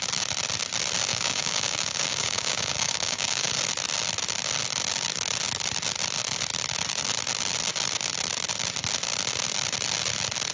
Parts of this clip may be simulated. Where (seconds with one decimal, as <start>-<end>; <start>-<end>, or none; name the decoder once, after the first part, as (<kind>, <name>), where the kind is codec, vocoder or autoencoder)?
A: 1.1-3.5 (codec, DAC)